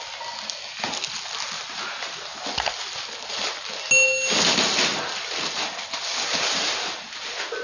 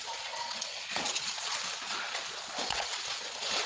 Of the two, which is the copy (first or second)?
second